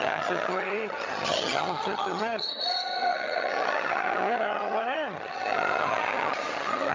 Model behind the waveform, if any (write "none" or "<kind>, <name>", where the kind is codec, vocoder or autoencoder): vocoder, HiFi-GAN